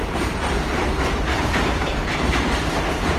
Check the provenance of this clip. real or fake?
fake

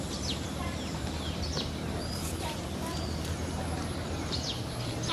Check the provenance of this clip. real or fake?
fake